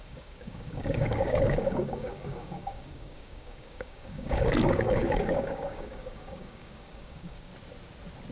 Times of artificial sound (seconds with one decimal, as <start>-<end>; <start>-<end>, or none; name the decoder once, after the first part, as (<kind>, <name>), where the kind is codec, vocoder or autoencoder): 0.0-7.5 (codec, DAC)